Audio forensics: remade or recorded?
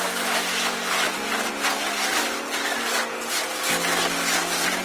recorded